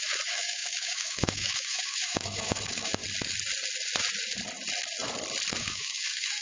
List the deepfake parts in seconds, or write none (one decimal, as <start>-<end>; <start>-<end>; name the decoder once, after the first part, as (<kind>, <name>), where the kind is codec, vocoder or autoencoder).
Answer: 0.0-3.0 (autoencoder, DAC-VAE); 5.6-6.4